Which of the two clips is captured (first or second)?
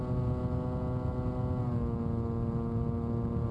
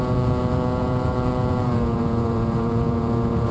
first